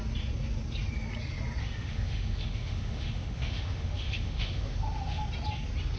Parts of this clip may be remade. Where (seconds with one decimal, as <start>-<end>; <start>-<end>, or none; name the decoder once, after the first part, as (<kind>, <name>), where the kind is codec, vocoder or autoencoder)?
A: 1.6-5.2 (autoencoder, DAC-VAE)